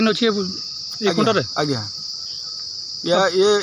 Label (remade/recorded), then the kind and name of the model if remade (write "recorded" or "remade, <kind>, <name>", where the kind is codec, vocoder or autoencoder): recorded